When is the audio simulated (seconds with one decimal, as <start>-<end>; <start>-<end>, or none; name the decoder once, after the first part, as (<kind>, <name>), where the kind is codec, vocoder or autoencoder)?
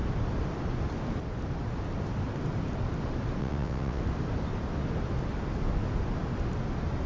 3.4-4.0 (vocoder, WaveNeXt)